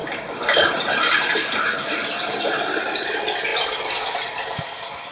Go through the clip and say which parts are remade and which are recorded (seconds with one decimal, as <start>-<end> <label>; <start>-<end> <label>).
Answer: 0.0-3.1 remade; 3.1-3.5 recorded; 3.5-5.1 remade